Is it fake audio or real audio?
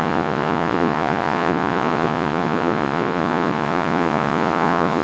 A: fake